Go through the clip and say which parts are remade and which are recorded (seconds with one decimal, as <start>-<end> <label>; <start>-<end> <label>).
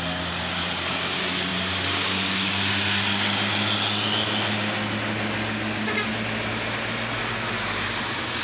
0.0-8.4 recorded